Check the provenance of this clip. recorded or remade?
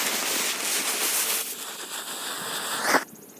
recorded